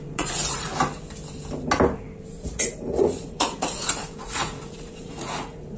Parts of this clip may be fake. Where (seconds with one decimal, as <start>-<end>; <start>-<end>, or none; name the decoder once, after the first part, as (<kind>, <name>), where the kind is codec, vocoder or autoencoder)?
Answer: 0.0-0.7 (vocoder, Vocos); 2.3-5.8